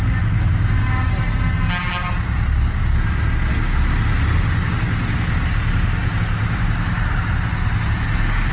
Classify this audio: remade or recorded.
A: recorded